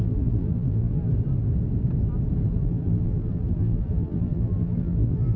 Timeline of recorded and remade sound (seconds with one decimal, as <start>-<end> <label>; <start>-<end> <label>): 0.0-1.1 remade; 1.1-2.5 recorded; 2.5-5.4 remade